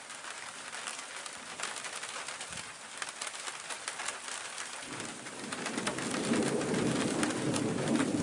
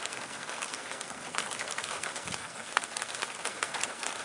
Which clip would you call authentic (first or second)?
first